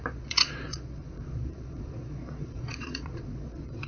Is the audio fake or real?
fake